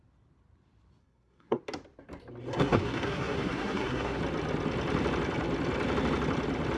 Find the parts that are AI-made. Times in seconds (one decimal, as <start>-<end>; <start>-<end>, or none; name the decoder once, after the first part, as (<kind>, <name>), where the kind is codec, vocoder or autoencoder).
1.0-1.6 (codec, SNAC); 2.5-4.2